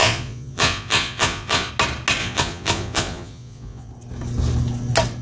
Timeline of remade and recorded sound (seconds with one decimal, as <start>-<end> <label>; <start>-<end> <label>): 0.0-1.7 remade; 1.7-2.2 recorded; 2.2-3.9 remade; 3.9-5.2 recorded